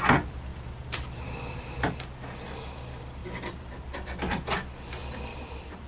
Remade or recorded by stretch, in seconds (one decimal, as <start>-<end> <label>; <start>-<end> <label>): 0.0-0.5 recorded; 0.5-1.6 remade; 1.6-3.2 recorded; 3.2-3.8 remade; 3.8-5.3 recorded; 5.3-5.9 remade